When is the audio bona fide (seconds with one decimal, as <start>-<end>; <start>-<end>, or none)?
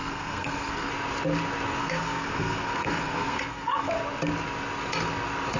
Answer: 0.9-1.8; 3.9-5.6